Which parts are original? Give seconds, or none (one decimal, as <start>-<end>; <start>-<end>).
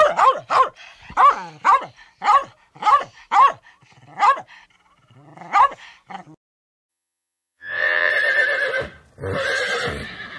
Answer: 0.0-6.9; 8.1-10.4